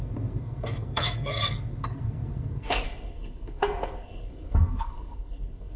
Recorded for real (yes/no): no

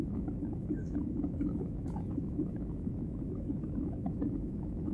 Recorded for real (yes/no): no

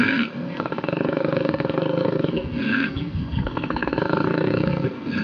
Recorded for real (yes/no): no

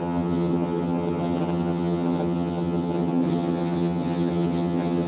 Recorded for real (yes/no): no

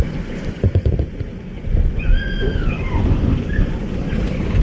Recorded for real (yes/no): no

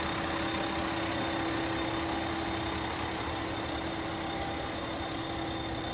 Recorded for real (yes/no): yes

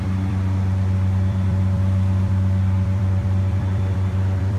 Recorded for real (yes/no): no